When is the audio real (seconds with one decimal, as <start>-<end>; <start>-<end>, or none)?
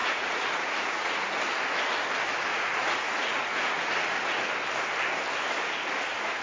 1.2-2.5; 4.5-6.4